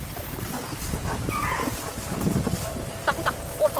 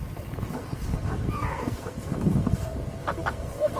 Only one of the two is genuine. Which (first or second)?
first